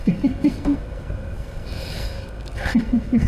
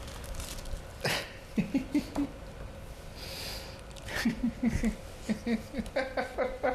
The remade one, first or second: first